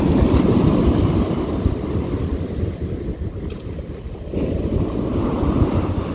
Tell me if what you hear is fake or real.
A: real